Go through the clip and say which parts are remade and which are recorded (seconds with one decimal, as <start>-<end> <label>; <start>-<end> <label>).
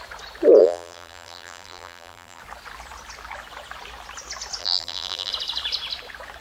0.0-0.6 recorded; 0.6-2.4 remade; 2.4-4.6 recorded; 4.6-5.3 remade; 5.3-6.4 recorded